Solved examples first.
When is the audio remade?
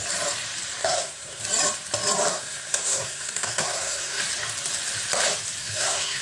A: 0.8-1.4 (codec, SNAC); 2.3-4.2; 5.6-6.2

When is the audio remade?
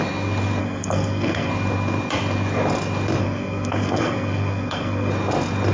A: 0.6-1.5 (codec, SNAC); 3.2-5.1